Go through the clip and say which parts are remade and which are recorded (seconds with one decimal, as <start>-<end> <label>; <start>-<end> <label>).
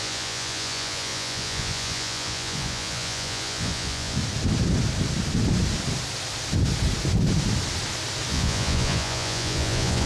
0.0-4.2 remade; 4.2-8.3 recorded; 8.3-10.1 remade